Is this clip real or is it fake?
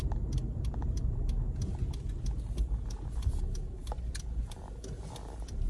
real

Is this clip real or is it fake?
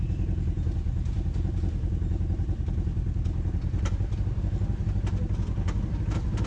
real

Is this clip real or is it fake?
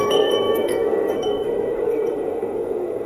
fake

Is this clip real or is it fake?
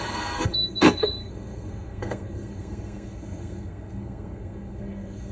fake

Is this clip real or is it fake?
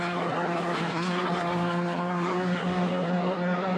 fake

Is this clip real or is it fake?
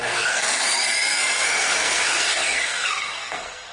fake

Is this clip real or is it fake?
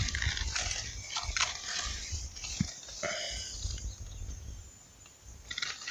real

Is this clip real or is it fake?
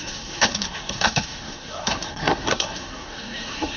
fake